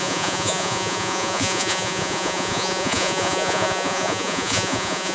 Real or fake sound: fake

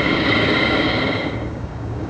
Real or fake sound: fake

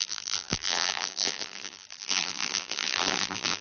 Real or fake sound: fake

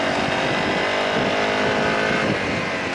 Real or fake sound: real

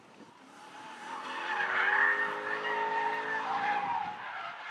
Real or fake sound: real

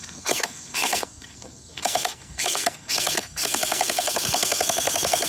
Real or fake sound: fake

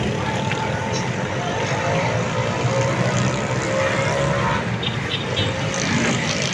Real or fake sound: real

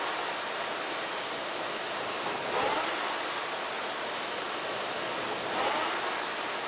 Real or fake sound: real